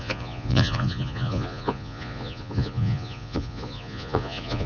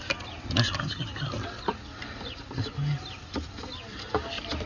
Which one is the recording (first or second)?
second